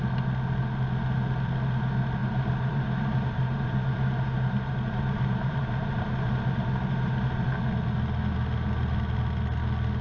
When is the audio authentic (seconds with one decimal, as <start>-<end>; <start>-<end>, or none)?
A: 0.0-2.2; 7.3-10.0